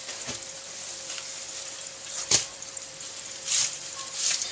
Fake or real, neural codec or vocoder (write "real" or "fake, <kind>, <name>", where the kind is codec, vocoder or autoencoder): fake, vocoder, BigVGAN v2